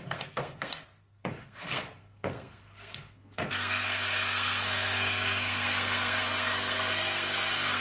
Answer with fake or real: fake